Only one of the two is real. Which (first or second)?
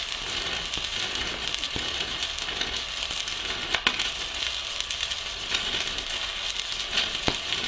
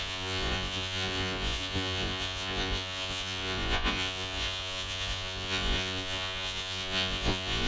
first